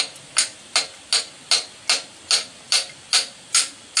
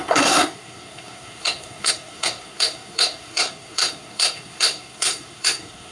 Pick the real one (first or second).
first